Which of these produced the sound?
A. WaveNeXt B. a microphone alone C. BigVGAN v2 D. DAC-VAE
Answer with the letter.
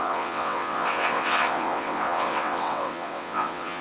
A